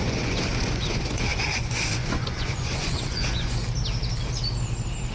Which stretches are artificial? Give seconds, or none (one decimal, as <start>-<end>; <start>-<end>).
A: 0.0-3.6